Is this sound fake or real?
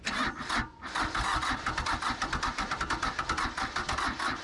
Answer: fake